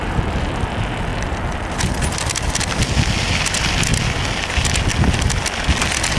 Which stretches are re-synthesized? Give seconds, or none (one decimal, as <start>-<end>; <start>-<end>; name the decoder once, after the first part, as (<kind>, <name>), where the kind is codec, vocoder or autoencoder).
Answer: none